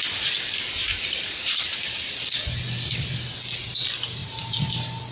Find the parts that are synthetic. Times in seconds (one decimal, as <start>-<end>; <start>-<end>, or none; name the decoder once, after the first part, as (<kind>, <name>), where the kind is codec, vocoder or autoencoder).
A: 0.8-2.7 (vocoder, BigVGAN v2); 4.2-5.1